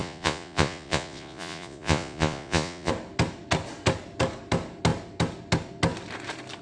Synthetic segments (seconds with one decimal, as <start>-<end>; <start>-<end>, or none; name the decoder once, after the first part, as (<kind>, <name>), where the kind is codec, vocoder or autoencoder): 0.0-2.9 (vocoder, Vocos)